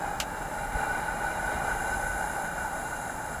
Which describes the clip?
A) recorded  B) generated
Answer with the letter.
A